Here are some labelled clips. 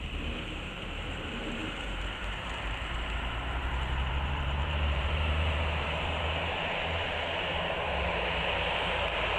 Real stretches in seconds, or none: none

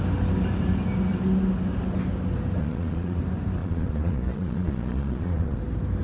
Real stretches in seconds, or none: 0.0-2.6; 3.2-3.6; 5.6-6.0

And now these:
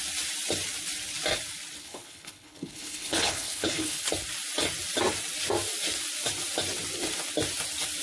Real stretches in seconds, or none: 0.0-1.8; 4.1-8.0

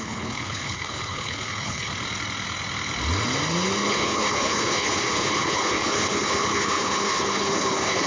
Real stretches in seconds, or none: 1.9-3.9

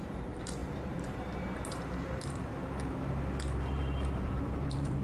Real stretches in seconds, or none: 2.5-3.7

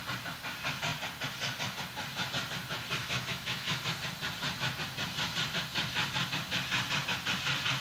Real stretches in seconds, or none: 0.0-3.0; 3.8-7.8

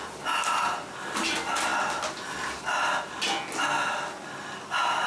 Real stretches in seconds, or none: 0.0-5.1

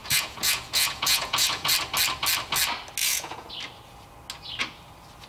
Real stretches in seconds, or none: 1.7-3.0; 3.5-5.3